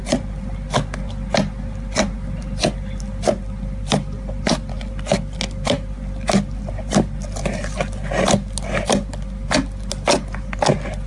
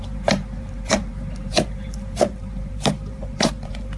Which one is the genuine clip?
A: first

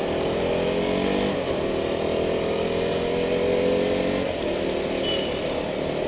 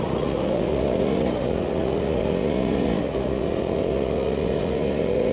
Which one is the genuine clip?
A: first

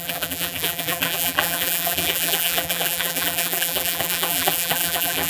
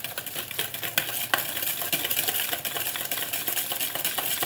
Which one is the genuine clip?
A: second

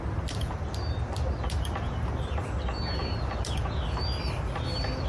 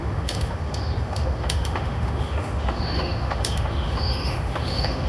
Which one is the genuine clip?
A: first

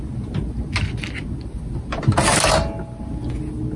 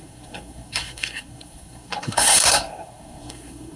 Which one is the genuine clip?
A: first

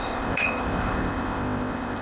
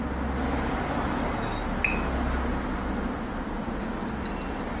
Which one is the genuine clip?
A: second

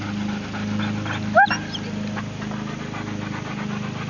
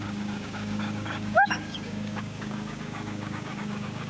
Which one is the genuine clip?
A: first